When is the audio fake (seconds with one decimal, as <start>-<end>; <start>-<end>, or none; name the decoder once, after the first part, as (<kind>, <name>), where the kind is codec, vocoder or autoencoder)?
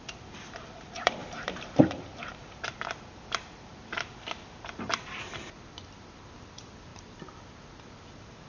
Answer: 0.0-2.7 (vocoder, BigVGAN v2); 3.7-8.5